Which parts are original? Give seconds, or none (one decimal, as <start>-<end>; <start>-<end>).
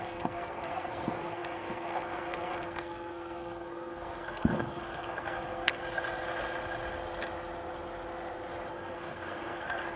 5.8-8.7